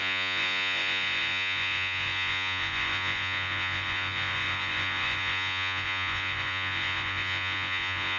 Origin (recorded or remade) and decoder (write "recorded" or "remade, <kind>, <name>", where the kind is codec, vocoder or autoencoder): remade, vocoder, Vocos